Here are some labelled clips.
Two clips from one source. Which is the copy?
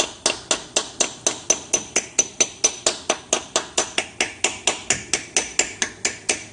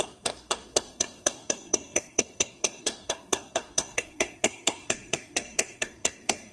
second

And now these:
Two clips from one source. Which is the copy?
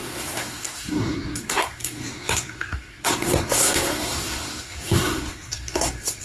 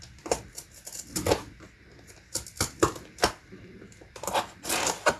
first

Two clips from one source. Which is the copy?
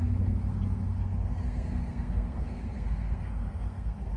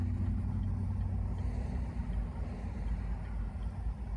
first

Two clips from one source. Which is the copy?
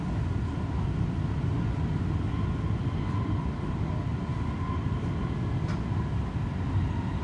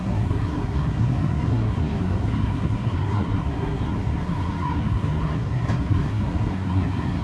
second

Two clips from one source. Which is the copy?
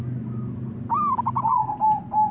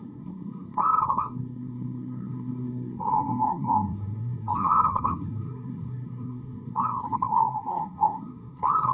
second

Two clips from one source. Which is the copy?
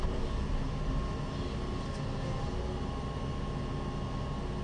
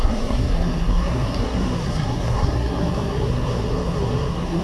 second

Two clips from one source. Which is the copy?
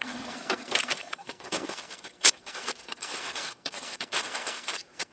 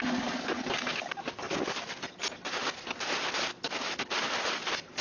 first